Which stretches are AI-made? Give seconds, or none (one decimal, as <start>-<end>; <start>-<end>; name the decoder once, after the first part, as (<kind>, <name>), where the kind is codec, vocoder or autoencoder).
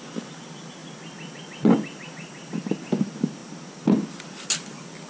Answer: none